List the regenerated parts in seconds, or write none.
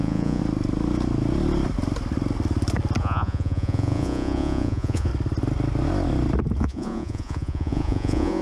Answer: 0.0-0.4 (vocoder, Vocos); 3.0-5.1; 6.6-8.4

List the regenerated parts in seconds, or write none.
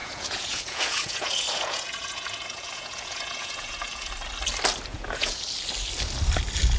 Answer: 0.0-4.1 (vocoder, Vocos); 4.9-5.4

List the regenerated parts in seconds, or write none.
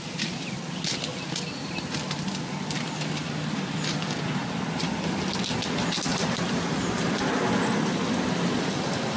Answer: 4.4-5.0 (vocoder, BigVGAN v2); 6.1-7.3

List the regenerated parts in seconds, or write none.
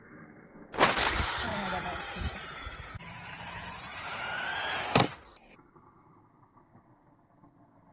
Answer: 1.5-4.8 (vocoder, Vocos)